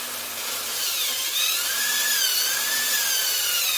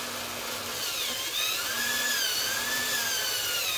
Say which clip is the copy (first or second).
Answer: first